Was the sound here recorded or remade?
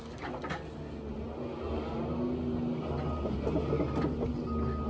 recorded